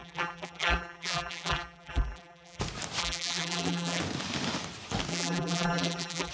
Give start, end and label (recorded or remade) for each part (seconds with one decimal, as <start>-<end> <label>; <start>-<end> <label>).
0.0-2.6 remade; 2.6-3.0 recorded; 3.0-4.0 remade; 4.0-5.1 recorded; 5.1-6.3 remade